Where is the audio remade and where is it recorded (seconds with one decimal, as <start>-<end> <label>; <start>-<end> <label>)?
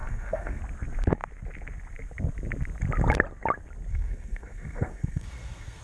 0.0-0.6 remade; 0.6-3.9 recorded; 3.9-5.8 remade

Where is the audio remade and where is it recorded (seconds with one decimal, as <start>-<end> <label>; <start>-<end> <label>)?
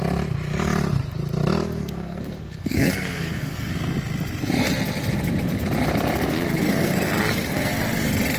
0.0-1.8 recorded; 1.8-3.7 remade; 3.7-6.6 recorded; 6.6-7.7 remade; 7.7-8.4 recorded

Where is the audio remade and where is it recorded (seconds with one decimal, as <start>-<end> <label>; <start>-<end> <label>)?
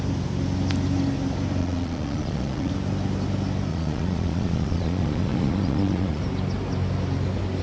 0.0-1.6 recorded; 1.6-2.7 remade; 2.7-3.7 recorded; 3.7-6.2 remade; 6.2-7.6 recorded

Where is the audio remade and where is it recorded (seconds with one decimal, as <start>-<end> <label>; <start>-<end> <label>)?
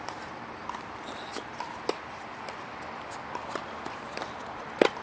0.0-5.0 recorded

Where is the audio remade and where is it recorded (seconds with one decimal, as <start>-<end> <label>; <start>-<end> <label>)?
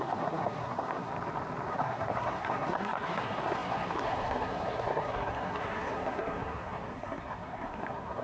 0.0-1.1 remade; 1.1-1.7 recorded; 1.7-8.2 remade